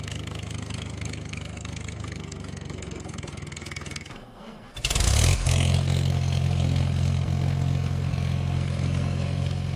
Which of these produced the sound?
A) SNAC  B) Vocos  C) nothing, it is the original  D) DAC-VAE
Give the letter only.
A